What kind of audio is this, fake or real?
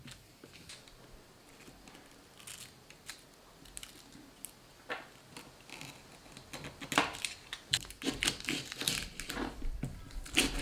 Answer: real